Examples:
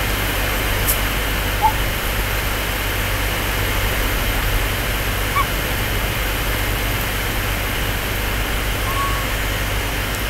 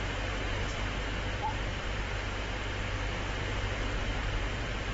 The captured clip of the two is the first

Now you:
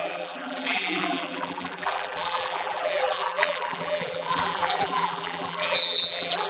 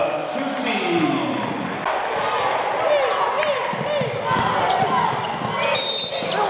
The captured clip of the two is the second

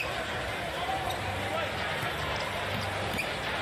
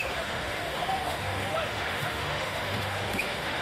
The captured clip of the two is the first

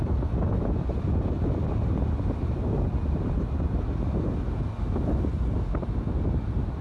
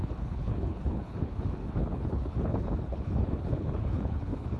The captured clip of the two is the first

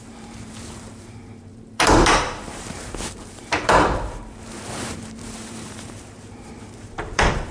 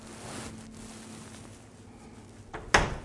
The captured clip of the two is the second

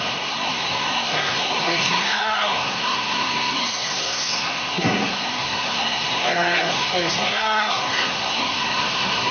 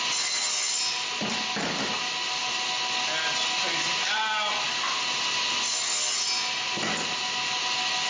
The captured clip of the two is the second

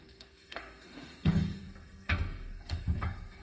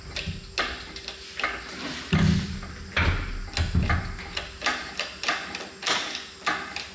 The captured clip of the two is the second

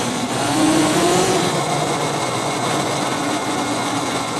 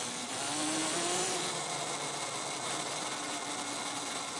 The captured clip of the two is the second